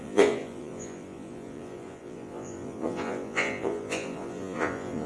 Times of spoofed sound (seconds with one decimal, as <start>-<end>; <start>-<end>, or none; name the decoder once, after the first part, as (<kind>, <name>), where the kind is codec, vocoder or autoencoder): 0.0-5.1 (vocoder, Vocos)